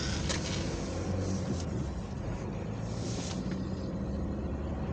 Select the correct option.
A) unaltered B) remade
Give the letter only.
A